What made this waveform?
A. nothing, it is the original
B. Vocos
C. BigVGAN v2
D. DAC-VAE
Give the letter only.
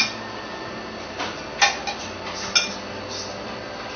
A